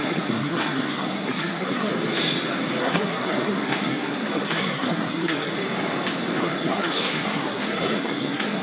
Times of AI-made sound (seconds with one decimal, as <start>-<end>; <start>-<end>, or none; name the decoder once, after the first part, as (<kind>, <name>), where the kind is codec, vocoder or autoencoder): 0.0-1.9 (codec, SNAC); 2.8-5.5; 6.4-8.6